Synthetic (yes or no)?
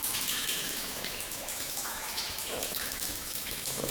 yes